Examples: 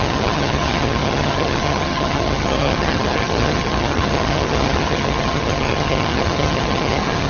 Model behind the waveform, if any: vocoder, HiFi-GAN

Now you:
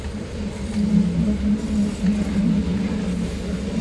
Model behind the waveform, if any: none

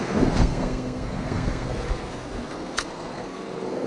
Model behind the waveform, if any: codec, SNAC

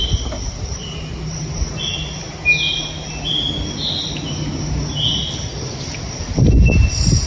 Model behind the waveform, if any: none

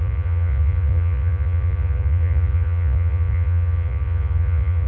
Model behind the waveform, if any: vocoder, Vocos